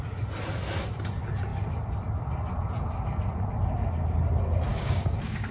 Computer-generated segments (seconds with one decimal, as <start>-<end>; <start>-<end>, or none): 4.7-5.5

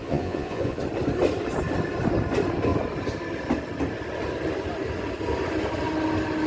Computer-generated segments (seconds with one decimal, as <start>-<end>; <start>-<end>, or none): 0.0-0.8

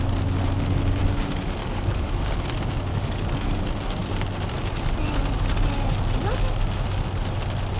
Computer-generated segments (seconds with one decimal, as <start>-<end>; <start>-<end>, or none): 1.6-2.1; 2.9-3.6

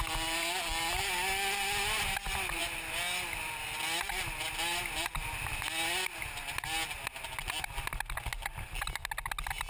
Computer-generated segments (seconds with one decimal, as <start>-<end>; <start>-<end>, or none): none

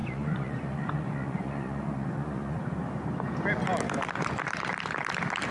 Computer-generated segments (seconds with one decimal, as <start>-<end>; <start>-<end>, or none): 0.0-2.6

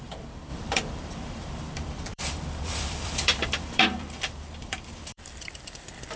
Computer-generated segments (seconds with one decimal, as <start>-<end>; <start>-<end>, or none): 0.0-6.2

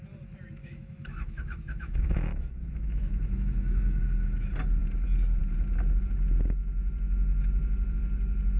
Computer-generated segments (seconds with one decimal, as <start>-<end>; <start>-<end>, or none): 0.6-4.0